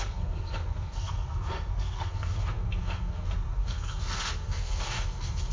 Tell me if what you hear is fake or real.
fake